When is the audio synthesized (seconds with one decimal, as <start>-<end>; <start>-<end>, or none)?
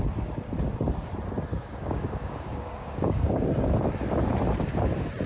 1.5-3.5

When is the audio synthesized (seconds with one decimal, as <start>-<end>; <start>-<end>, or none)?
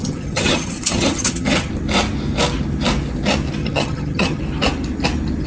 0.0-1.7; 3.6-4.4